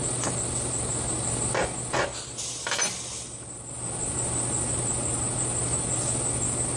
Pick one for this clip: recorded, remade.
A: recorded